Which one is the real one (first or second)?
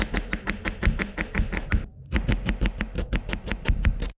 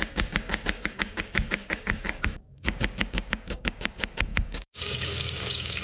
first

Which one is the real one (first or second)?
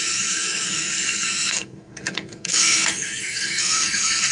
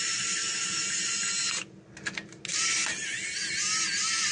second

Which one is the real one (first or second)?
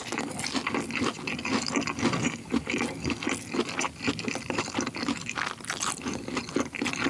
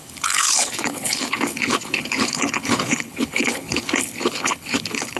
first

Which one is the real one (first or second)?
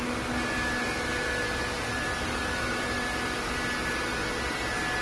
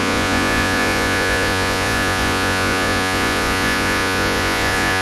first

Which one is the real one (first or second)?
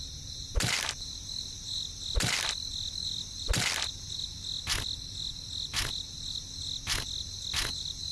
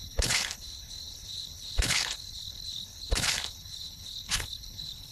first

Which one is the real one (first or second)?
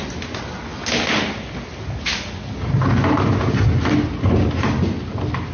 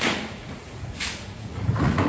first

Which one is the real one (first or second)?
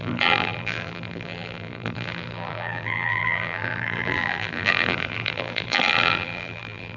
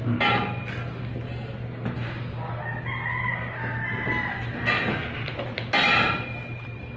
second